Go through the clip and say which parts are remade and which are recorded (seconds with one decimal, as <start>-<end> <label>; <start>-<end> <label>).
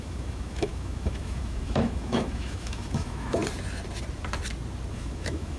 0.0-3.4 remade; 3.4-4.9 recorded; 4.9-5.6 remade